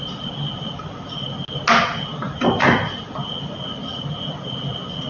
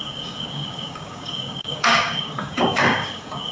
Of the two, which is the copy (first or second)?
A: second